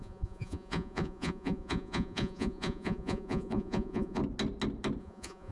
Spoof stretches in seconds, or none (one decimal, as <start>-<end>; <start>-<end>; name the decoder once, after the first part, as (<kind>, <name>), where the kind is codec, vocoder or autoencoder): 0.0-4.2 (vocoder, Vocos); 5.0-5.5